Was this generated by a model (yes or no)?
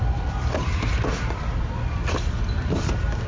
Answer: yes